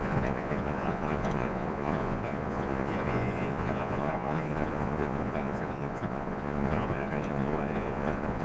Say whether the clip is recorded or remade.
remade